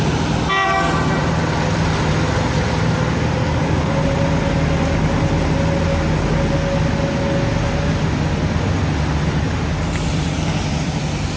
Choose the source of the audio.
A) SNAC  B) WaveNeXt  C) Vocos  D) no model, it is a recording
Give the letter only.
D